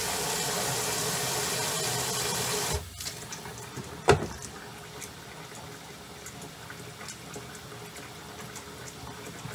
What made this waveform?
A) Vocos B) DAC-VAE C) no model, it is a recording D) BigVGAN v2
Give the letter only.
C